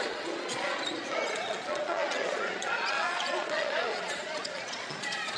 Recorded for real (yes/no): no